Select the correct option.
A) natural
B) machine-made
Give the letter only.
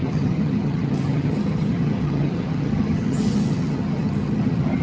B